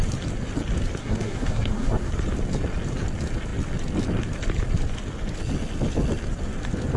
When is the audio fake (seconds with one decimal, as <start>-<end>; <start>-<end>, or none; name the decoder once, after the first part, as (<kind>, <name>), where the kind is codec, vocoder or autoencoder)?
1.0-2.1 (codec, SNAC)